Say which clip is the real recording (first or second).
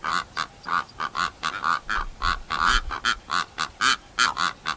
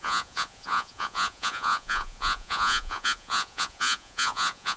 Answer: first